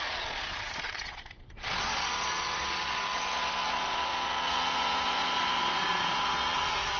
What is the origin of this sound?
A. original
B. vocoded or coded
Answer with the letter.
B